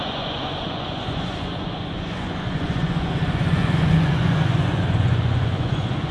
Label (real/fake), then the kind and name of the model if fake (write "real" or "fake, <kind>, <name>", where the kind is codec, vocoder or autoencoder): fake, vocoder, Vocos